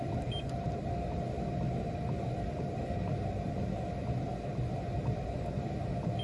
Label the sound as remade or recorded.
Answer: recorded